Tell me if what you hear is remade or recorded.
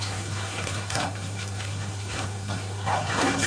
remade